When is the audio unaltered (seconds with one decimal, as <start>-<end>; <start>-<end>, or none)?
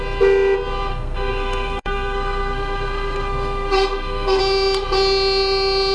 0.0-0.9; 4.4-5.9